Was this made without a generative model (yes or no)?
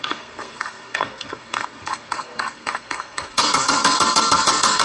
no